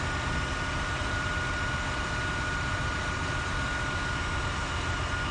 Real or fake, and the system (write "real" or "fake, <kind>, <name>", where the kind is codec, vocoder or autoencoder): real